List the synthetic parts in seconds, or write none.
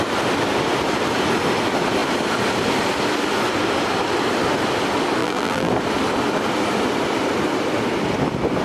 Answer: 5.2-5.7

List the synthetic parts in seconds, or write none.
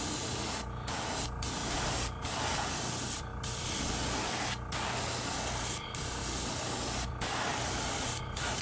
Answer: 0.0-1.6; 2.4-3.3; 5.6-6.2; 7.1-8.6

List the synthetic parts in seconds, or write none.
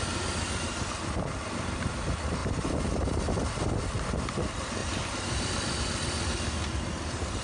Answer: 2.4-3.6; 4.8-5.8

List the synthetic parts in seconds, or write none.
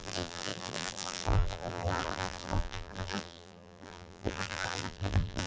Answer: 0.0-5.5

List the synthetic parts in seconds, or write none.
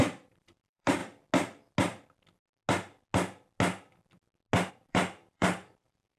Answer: 0.0-1.0; 4.7-6.2